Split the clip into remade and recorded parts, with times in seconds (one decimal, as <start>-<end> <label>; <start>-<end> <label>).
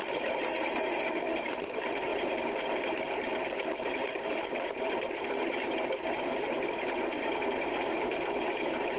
0.0-2.1 remade; 2.1-2.6 recorded; 2.6-9.0 remade